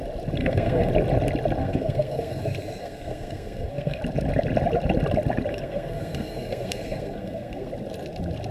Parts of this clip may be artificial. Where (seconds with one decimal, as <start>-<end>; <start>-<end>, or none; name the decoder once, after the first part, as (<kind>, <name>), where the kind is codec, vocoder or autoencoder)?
0.4-0.9 (codec, SNAC); 1.6-2.4; 2.8-4.0; 5.5-7.7